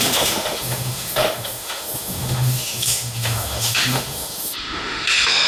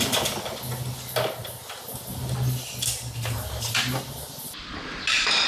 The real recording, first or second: second